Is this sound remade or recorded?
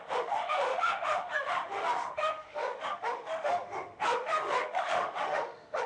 remade